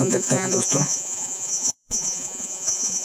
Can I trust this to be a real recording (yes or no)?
no